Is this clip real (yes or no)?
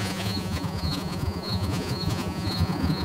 no